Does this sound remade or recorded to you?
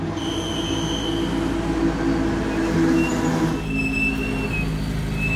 recorded